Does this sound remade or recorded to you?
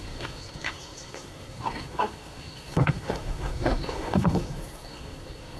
remade